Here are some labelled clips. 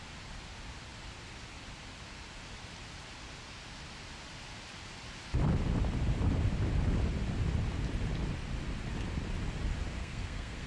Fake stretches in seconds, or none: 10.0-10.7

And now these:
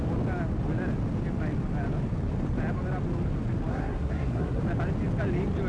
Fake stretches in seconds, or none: 3.7-4.6

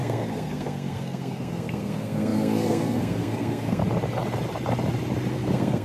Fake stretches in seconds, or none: 0.0-3.8; 5.3-5.8

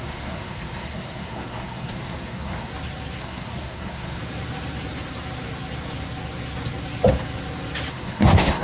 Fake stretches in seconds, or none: 0.0-2.7; 3.2-4.2; 7.9-8.6

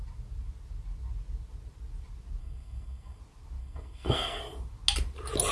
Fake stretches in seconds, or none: 2.4-3.2; 3.6-4.4

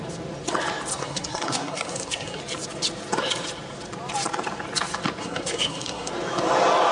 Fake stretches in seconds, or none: 0.9-2.4; 5.2-6.1

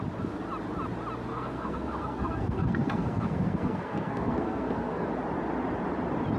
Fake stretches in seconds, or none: 1.3-5.1